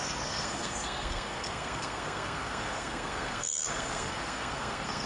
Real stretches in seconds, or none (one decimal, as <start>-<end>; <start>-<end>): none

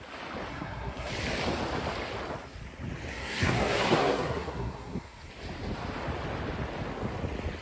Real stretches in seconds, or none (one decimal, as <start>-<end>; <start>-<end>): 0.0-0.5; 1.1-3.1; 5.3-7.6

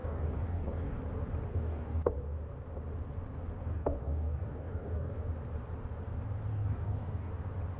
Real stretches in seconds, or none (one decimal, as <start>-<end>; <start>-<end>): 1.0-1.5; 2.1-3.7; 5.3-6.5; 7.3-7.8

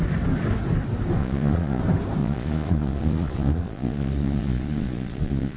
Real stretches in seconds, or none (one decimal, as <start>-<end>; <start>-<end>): 0.0-1.2; 1.8-2.2

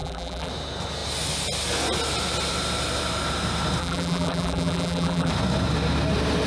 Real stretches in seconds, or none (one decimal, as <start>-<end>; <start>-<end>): 0.5-3.8; 5.3-6.5

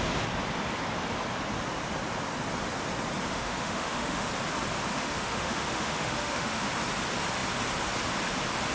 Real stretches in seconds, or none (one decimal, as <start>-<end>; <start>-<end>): 0.0-3.3; 4.3-4.9; 6.7-8.7

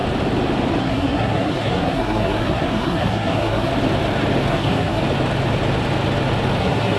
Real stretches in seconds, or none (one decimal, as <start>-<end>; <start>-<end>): 0.0-0.8; 3.7-4.5; 5.0-6.6